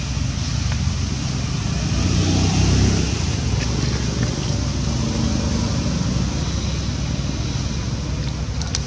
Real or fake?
real